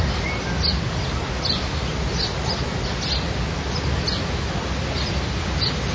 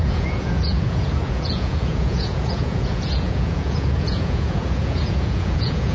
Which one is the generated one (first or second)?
second